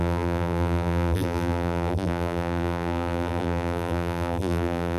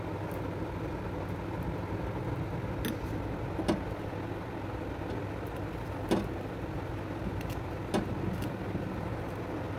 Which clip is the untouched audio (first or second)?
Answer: second